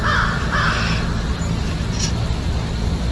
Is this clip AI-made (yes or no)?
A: no